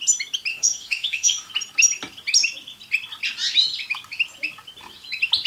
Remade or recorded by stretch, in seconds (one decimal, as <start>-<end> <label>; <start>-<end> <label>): 0.0-0.5 recorded; 0.5-1.5 remade; 1.5-5.5 recorded